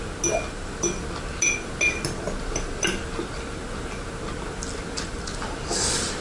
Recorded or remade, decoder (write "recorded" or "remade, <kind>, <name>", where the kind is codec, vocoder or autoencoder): recorded